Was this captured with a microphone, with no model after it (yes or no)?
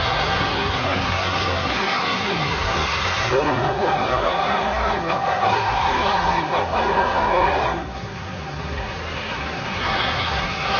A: no